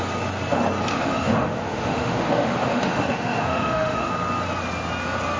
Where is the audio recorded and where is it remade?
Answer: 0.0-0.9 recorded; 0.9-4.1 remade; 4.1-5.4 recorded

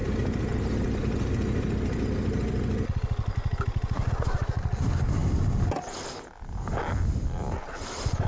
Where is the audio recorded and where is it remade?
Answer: 0.0-8.3 recorded

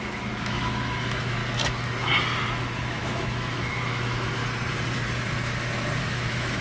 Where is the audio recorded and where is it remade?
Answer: 0.0-1.4 remade; 1.4-2.8 recorded; 2.8-4.4 remade; 4.4-6.0 recorded; 6.0-6.6 remade

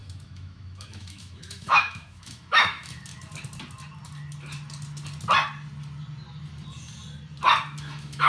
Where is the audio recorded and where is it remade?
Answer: 0.0-3.1 remade; 3.1-7.8 recorded; 7.8-8.3 remade

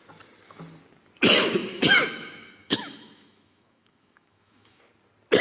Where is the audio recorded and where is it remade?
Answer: 0.0-1.6 recorded; 1.6-4.8 remade; 4.8-5.4 recorded